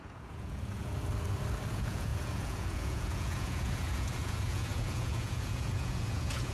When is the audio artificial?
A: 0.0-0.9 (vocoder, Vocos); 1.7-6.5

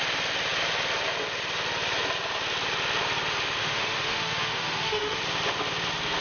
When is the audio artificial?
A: 3.6-5.2 (autoencoder, DAC-VAE)

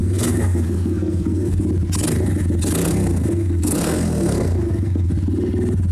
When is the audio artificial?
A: 0.0-1.6 (codec, SNAC); 2.8-5.1

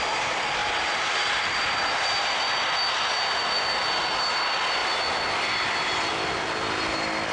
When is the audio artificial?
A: none

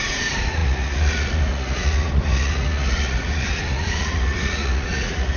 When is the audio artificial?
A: 0.0-5.4 (vocoder, Vocos)

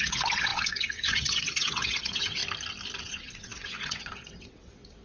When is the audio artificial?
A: 0.0-2.4 (vocoder, WaveNeXt); 3.0-5.0

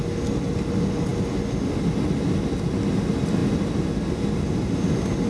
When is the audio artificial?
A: none

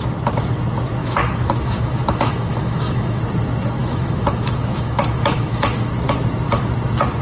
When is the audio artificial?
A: 1.0-3.2 (autoencoder, DAC-VAE); 3.8-5.9